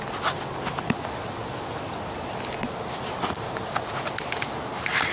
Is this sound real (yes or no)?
yes